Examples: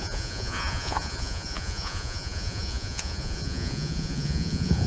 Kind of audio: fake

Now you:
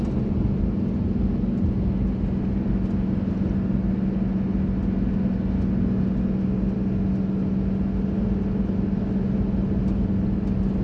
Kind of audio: real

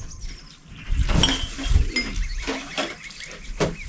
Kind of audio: real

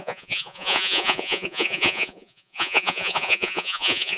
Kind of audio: fake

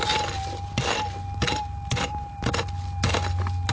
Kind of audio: real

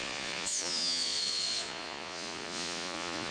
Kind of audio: fake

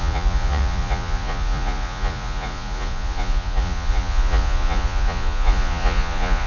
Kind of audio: fake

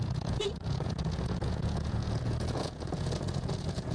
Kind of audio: fake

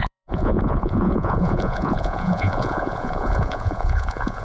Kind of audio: fake